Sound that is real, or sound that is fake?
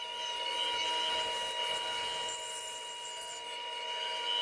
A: real